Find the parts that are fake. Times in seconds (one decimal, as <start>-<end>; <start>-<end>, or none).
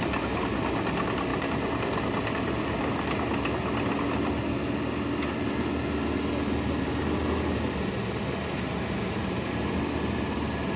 none